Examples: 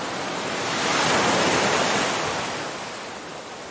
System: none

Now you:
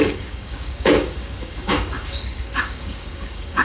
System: codec, DAC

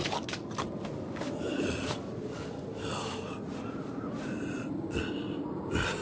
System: none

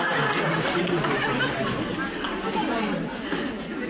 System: none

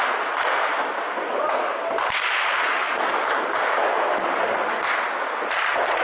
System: none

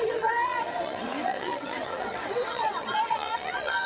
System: vocoder, WaveNeXt